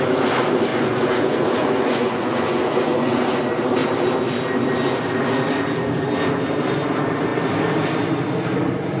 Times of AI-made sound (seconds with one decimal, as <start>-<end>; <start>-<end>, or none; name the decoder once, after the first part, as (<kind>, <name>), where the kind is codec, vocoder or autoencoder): 0.7-3.4 (vocoder, Vocos)